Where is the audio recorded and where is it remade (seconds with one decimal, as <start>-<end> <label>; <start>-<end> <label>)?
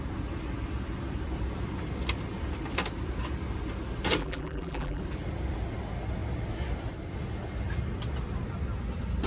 0.0-4.2 recorded; 4.2-5.0 remade; 5.0-9.3 recorded